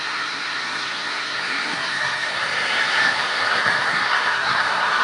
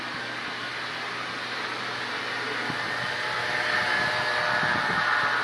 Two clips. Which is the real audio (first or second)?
second